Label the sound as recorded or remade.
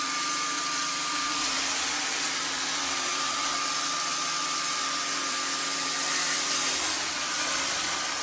remade